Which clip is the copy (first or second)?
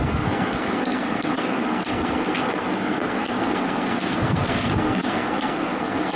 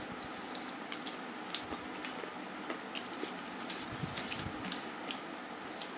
first